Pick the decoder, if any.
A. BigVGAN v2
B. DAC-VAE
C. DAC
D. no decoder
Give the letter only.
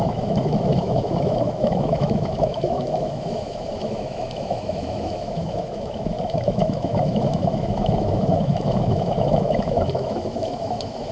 B